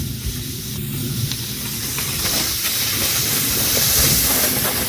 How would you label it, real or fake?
fake